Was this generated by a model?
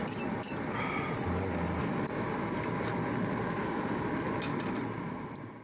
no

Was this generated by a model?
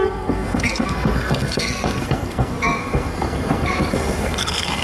yes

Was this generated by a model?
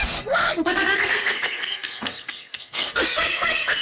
yes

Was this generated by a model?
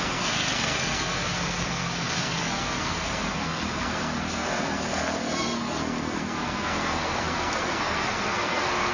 yes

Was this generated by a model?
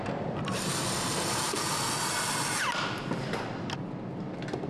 no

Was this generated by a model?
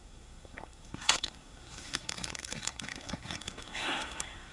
yes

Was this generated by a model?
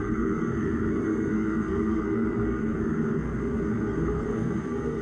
yes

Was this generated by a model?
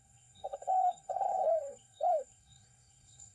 yes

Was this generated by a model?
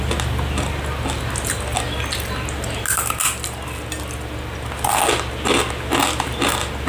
no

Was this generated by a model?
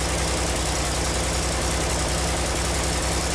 no